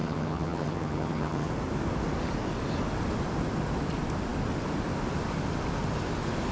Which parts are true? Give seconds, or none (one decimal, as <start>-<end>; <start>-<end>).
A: 1.5-6.5